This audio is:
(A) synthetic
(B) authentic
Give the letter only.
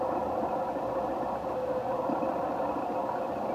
B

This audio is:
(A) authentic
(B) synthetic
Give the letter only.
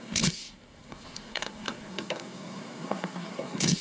B